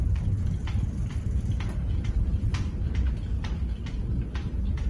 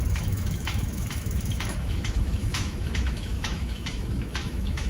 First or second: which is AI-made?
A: second